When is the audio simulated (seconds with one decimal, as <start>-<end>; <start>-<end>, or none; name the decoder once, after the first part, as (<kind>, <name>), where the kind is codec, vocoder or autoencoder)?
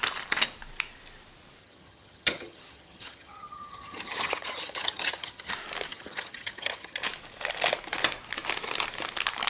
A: 1.6-5.5 (vocoder, HiFi-GAN); 5.9-7.0